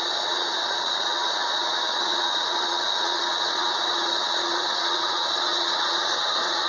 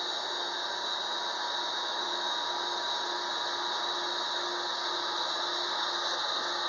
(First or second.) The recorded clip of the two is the second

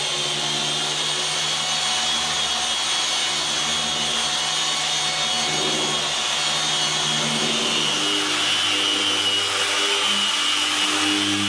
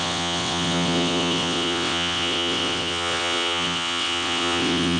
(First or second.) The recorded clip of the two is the first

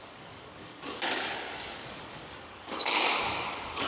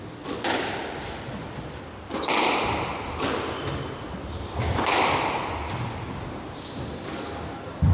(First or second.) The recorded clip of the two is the second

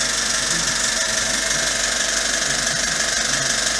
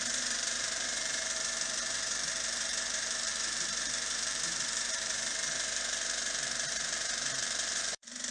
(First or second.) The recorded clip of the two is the first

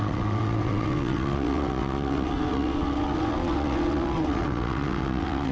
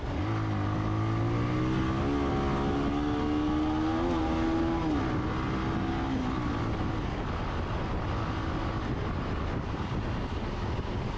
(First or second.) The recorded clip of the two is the second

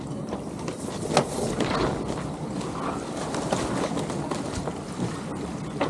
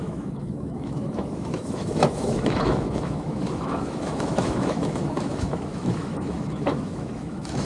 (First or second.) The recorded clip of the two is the first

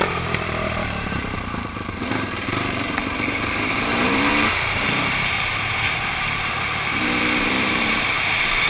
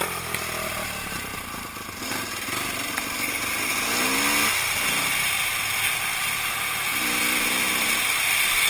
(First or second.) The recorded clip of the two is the second